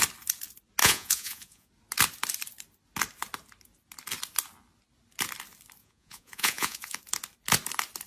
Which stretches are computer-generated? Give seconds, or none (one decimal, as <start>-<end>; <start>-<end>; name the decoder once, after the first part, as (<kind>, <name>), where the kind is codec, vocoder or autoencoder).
0.8-1.7 (vocoder, Vocos); 5.8-7.0